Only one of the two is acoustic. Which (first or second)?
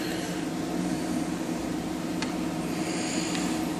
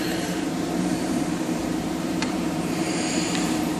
first